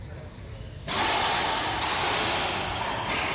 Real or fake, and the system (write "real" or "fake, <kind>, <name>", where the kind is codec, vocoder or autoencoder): real